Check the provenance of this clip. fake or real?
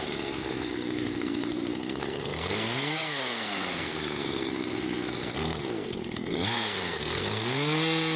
fake